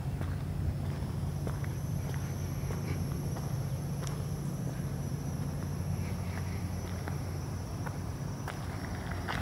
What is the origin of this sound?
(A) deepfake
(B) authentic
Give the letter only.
A